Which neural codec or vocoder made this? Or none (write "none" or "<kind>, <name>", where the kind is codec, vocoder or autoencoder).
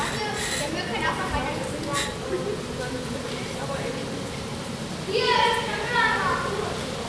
none